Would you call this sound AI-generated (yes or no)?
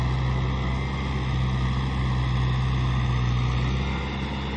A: no